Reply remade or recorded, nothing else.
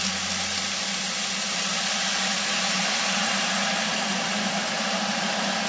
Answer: recorded